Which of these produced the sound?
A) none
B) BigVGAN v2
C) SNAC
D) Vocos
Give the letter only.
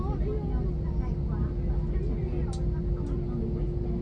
A